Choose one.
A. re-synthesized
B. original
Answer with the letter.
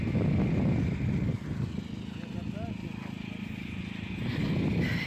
B